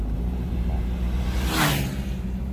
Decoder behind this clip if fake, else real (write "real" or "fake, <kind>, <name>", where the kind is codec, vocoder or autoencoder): fake, vocoder, BigVGAN v2